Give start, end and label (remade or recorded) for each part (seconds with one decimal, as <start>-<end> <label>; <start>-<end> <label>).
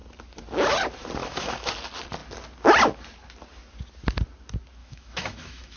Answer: 0.0-1.2 recorded; 1.2-1.7 remade; 1.7-4.8 recorded; 4.8-5.8 remade